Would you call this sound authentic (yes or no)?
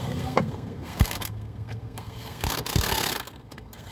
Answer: no